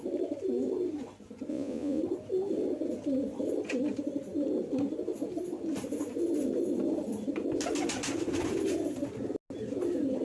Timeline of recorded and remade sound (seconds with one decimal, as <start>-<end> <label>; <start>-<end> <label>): 0.0-1.5 recorded; 1.5-2.0 remade; 2.0-10.2 recorded